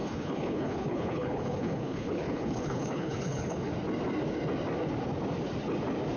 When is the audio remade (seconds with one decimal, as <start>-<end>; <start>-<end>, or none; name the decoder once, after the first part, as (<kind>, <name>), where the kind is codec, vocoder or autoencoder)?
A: 0.0-3.7 (codec, HILCodec)